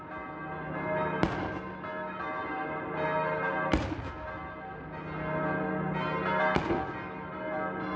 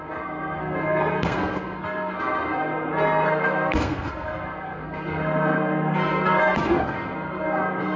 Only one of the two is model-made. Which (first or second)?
second